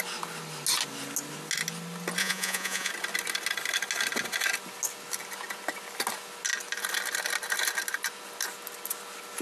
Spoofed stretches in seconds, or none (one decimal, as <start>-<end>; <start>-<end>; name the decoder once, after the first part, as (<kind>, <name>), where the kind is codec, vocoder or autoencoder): 2.2-2.9 (vocoder, Vocos)